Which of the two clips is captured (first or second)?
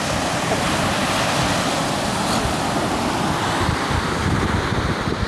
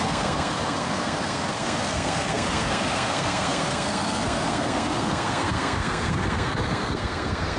first